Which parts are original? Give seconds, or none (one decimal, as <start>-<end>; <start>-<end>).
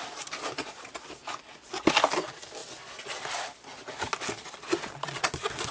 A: 0.0-5.7